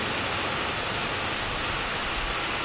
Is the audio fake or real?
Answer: real